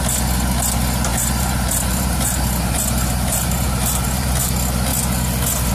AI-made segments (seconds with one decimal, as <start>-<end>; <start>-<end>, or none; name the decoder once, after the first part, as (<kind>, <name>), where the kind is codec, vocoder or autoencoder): 1.1-4.5 (vocoder, BigVGAN v2)